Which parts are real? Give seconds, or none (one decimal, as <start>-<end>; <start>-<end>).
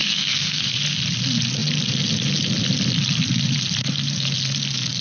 0.6-5.0